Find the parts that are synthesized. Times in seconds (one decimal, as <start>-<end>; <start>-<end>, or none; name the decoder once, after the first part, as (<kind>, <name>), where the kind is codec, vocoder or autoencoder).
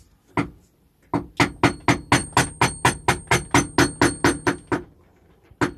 none